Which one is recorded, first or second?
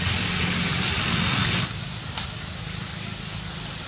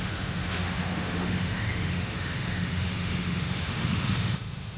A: first